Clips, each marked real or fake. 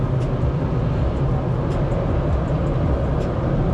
real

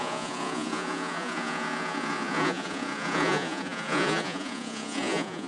fake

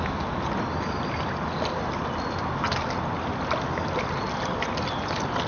real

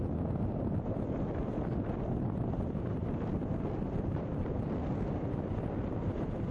real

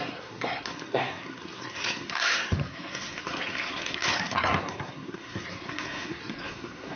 fake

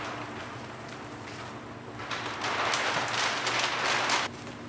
real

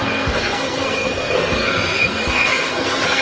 fake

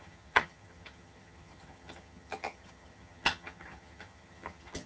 fake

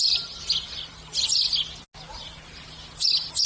real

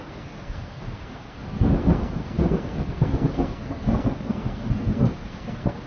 fake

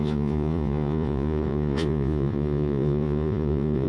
fake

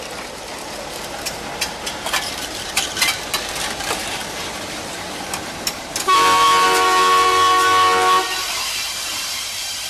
fake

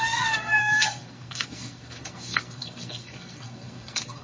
fake